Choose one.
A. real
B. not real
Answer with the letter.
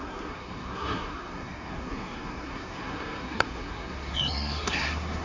B